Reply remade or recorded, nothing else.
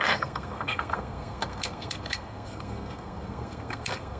remade